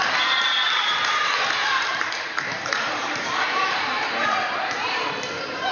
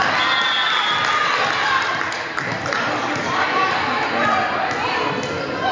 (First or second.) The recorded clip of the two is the second